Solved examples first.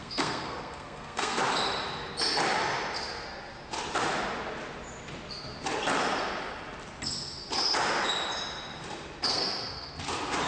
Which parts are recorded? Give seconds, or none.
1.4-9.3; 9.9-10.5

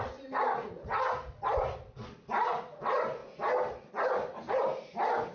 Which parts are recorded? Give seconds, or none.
0.0-5.3

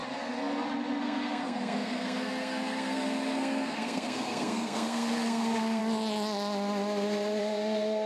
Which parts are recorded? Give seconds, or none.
0.0-1.0; 5.8-7.4

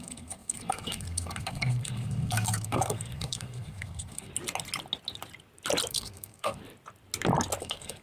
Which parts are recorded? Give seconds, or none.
4.3-5.9; 6.6-7.6

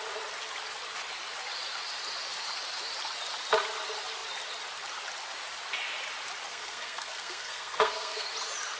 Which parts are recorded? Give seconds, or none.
0.0-6.5; 8.3-8.8

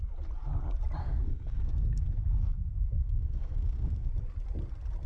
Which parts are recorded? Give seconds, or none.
0.0-1.0; 4.1-5.1

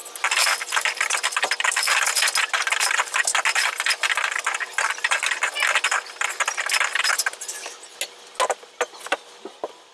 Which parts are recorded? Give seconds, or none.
0.0-9.9

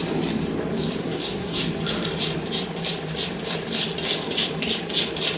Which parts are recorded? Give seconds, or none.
0.0-1.0; 1.7-5.4